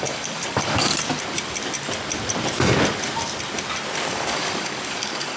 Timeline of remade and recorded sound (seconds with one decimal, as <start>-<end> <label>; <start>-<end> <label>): 0.0-0.9 remade; 0.9-4.1 recorded; 4.1-5.4 remade